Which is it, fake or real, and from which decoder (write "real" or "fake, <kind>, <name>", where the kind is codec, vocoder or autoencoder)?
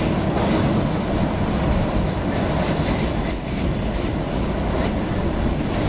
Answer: real